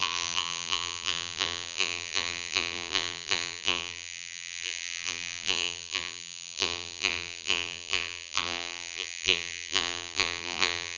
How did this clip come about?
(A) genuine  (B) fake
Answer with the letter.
B